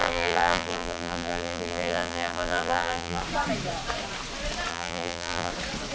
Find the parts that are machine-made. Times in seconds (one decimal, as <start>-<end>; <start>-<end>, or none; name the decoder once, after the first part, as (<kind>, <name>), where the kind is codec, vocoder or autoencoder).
0.0-3.2 (vocoder, BigVGAN v2); 4.7-5.5